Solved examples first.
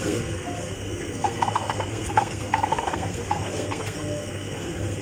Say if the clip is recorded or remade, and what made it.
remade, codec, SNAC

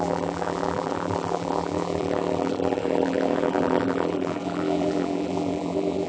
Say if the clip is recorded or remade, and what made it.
remade, vocoder, BigVGAN v2